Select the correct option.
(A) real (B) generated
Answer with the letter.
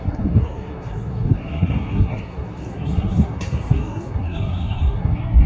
B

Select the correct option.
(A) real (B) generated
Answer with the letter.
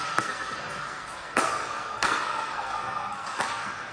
B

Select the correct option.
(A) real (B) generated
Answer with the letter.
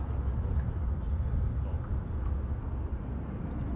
A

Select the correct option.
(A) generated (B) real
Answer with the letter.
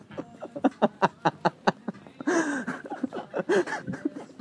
B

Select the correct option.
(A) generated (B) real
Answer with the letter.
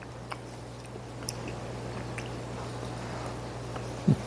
B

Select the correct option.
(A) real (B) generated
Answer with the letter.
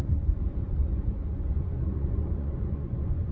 B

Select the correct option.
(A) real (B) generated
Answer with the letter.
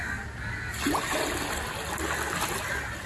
A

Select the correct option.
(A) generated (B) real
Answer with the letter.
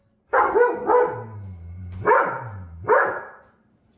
B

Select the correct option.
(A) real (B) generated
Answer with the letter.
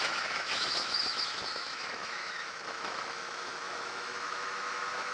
B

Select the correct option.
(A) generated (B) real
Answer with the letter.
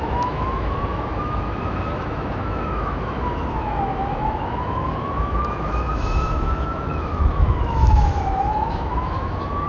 A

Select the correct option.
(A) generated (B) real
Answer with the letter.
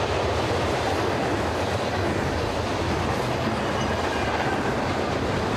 A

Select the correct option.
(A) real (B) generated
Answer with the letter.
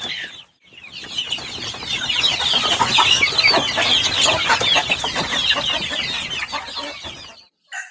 A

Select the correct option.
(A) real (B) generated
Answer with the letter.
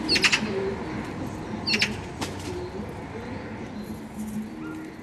A